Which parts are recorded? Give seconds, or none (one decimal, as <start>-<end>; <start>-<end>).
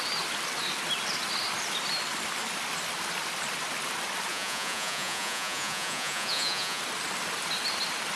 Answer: 0.0-4.3; 6.8-8.2